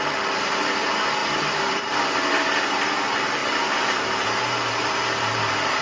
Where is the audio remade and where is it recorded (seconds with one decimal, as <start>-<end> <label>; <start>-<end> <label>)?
0.0-1.2 recorded; 1.2-2.7 remade; 2.7-3.4 recorded; 3.4-5.8 remade